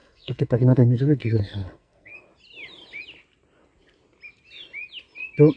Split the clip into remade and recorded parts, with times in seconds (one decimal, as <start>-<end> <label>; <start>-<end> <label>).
0.0-2.1 remade; 2.1-5.6 recorded